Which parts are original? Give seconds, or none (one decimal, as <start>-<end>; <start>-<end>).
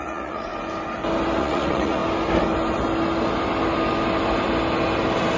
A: 0.5-1.4; 2.0-5.4